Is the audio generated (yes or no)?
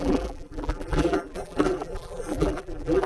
yes